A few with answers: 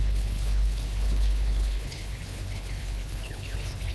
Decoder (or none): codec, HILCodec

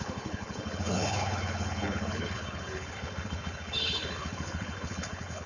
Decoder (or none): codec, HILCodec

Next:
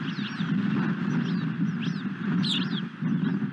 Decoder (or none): none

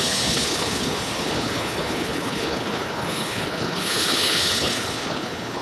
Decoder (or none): codec, HILCodec